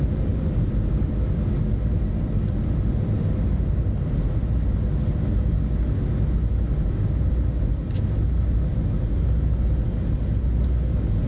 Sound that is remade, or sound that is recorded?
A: recorded